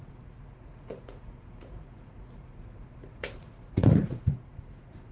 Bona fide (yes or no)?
no